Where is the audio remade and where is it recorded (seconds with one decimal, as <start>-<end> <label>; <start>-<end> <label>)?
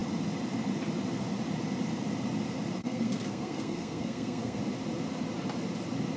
0.0-2.8 recorded; 2.8-4.6 remade; 4.6-6.2 recorded